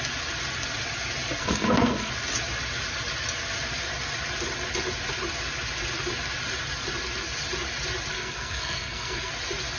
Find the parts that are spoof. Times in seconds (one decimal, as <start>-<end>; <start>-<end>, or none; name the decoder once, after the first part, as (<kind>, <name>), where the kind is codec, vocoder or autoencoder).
1.4-2.1 (codec, SNAC); 8.1-9.3